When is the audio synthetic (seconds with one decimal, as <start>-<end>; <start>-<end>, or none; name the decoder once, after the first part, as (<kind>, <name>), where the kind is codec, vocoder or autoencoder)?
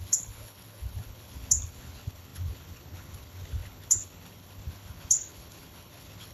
0.0-6.3 (codec, HILCodec)